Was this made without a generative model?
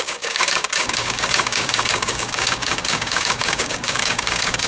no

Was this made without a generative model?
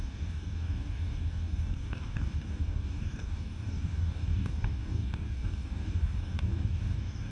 no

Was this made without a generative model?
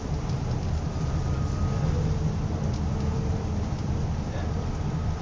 yes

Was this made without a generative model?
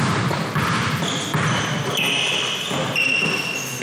yes